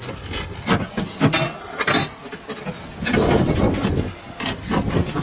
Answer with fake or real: real